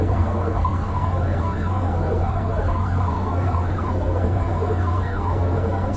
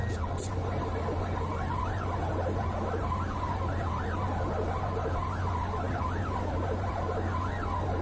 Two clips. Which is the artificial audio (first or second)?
first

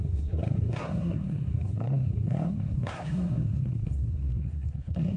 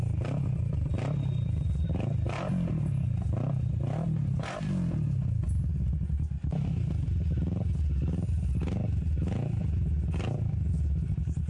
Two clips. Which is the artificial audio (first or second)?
first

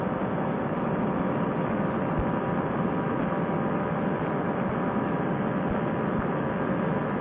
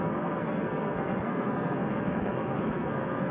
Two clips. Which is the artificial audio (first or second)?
second